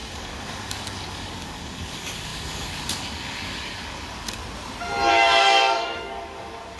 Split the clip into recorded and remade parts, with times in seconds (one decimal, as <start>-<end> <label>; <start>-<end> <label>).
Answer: 0.0-4.4 remade; 4.4-5.1 recorded; 5.1-6.8 remade